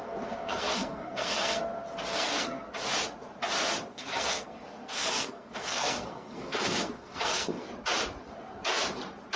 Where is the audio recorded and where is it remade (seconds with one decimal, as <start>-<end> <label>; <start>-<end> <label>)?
0.0-1.6 remade; 1.6-2.1 recorded; 2.1-2.7 remade; 2.7-3.9 recorded; 3.9-7.7 remade; 7.7-9.4 recorded